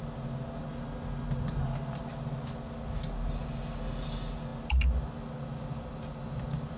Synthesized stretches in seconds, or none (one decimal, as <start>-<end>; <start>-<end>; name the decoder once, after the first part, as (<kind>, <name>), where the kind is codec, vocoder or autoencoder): none